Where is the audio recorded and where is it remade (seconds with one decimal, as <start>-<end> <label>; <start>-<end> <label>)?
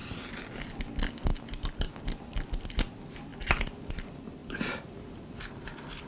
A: 0.0-4.4 recorded; 4.4-5.6 remade; 5.6-6.1 recorded